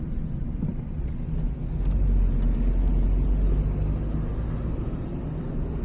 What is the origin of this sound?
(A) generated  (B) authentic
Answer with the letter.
B